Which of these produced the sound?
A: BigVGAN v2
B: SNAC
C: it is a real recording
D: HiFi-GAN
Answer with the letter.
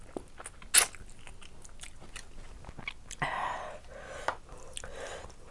C